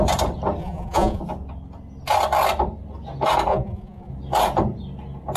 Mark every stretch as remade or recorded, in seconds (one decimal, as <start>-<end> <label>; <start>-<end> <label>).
0.0-0.6 recorded; 0.6-1.2 remade; 1.2-3.5 recorded; 3.5-4.1 remade; 4.1-5.4 recorded